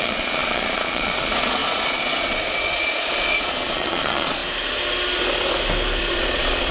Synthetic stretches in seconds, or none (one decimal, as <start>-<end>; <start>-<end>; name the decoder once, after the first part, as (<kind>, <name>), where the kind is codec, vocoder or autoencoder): 0.0-4.4 (vocoder, Vocos); 6.0-6.7